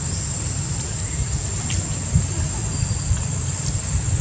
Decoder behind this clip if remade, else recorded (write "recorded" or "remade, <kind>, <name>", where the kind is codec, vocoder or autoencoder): recorded